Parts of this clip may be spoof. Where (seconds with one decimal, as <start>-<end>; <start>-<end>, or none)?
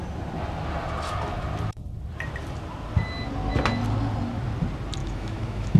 5.0-5.8